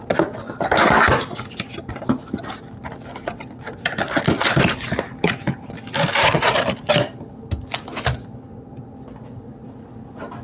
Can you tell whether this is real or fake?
real